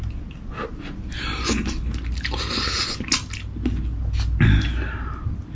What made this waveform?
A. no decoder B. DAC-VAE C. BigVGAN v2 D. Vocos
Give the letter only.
A